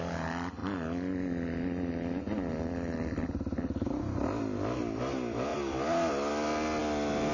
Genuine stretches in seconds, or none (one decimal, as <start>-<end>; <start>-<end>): 0.0-7.3